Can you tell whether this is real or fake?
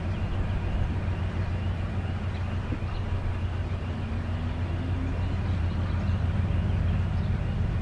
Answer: real